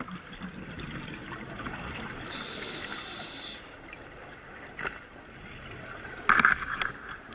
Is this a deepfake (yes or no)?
no